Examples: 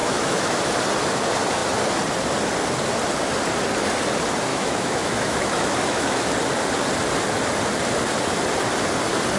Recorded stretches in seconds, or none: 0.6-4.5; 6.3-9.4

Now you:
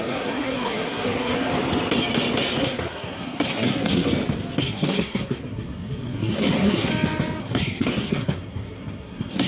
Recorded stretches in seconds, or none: 1.5-2.6; 4.1-4.6; 6.9-7.4

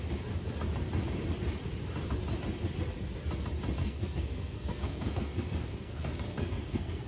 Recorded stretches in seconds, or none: 0.0-3.8